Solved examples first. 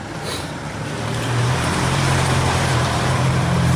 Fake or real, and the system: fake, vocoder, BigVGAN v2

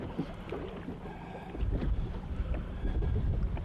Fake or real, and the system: real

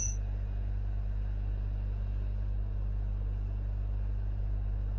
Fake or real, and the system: real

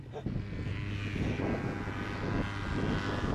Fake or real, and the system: real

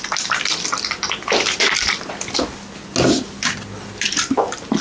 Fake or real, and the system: real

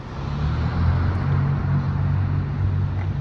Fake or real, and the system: real